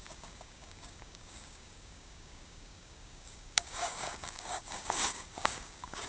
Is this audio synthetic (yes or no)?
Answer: yes